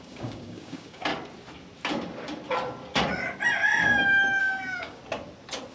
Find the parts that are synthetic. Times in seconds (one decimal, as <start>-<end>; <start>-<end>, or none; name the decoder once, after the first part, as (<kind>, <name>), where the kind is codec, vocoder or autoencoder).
0.0-1.1 (codec, DAC); 4.4-5.0

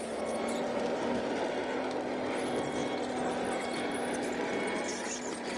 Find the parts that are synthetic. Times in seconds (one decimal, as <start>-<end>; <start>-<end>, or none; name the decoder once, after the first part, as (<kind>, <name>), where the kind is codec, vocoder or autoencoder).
none

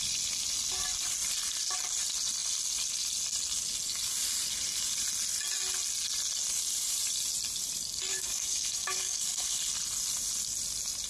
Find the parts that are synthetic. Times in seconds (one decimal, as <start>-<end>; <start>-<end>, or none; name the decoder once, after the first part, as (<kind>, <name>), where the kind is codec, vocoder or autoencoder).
8.1-9.6 (codec, DAC)

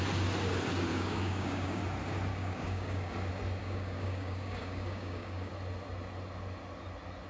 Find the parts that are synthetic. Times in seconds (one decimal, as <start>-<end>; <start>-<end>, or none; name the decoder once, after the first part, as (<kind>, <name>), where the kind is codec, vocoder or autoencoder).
0.9-1.8 (codec, DAC); 2.3-3.1; 3.6-5.5

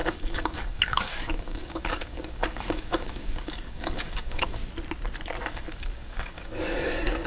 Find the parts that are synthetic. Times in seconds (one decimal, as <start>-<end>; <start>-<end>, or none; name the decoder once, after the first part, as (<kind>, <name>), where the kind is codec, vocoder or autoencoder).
0.0-4.6 (codec, DAC); 5.4-7.3

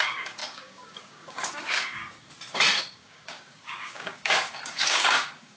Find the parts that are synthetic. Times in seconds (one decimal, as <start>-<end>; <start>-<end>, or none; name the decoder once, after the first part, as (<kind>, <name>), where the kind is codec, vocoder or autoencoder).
0.0-2.0 (codec, DAC); 2.8-5.6

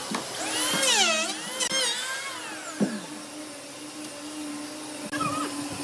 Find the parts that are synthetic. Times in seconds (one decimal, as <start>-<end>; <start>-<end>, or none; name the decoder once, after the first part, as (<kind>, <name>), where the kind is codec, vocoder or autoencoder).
none

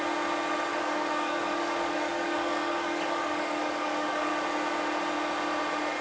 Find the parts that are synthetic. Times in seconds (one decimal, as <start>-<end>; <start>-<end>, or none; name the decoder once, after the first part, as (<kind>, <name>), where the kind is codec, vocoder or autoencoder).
0.7-4.3 (codec, DAC)